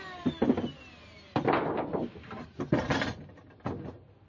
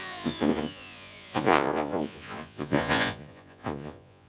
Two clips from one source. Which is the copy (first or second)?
second